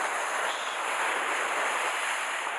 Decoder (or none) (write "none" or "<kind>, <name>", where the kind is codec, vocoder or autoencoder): none